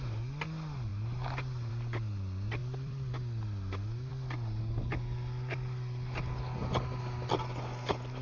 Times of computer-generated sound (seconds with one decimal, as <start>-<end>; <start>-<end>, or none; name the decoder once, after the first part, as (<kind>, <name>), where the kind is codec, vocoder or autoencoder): 2.6-3.1 (vocoder, BigVGAN v2); 6.6-7.3